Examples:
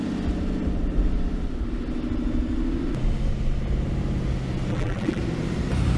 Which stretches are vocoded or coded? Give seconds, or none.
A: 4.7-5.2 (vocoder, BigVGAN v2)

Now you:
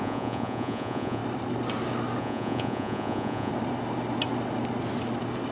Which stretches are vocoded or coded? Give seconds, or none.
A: 0.0-1.2 (vocoder, Vocos); 2.2-3.5

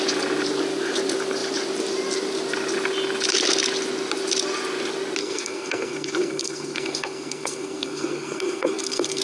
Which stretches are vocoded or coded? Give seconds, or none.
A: 5.2-9.2 (codec, SNAC)